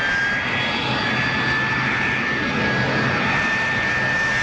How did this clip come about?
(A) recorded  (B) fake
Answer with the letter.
A